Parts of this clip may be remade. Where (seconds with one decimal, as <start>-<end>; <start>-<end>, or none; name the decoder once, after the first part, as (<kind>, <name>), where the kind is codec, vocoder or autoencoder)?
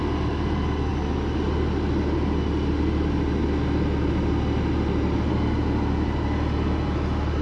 none